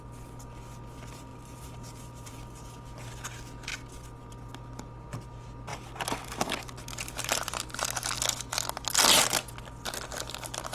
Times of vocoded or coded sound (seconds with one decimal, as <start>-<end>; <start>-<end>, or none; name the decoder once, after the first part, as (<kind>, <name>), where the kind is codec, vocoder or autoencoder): 1.3-2.3 (vocoder, BigVGAN v2)